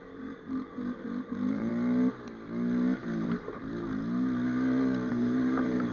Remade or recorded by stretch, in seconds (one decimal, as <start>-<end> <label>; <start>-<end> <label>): 0.0-1.7 remade; 1.7-3.0 recorded; 3.0-3.6 remade; 3.6-5.1 recorded; 5.1-5.9 remade